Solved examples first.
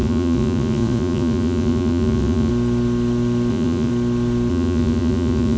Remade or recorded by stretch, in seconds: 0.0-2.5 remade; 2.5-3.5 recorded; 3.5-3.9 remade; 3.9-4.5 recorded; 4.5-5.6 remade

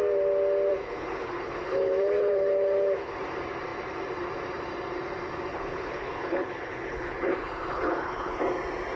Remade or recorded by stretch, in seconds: 0.0-0.7 recorded; 0.7-3.2 remade; 3.2-5.5 recorded; 5.5-8.4 remade; 8.4-9.0 recorded

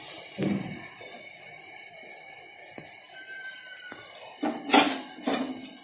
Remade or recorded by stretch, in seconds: 0.0-3.6 remade; 3.6-5.2 recorded; 5.2-5.8 remade